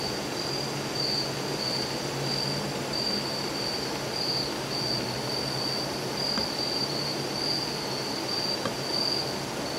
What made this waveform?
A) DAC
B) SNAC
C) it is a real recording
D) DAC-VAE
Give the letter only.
C